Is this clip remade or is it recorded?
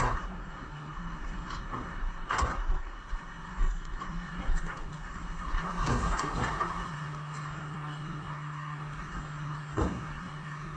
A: remade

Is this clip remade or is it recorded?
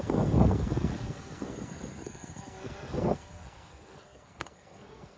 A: remade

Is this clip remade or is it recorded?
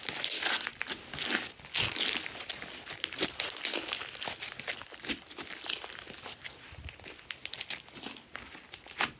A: recorded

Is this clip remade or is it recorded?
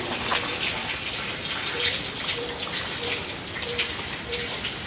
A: recorded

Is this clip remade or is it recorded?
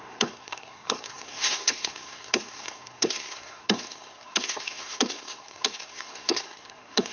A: remade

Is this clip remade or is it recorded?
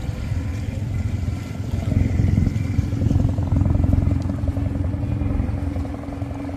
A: recorded